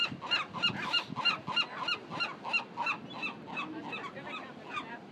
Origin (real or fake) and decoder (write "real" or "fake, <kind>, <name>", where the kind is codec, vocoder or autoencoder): real